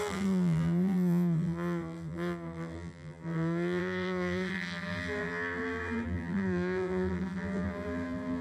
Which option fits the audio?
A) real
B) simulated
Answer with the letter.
B